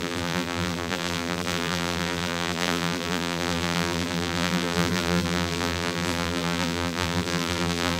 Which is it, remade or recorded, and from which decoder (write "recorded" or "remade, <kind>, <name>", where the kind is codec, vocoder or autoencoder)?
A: remade, vocoder, BigVGAN v2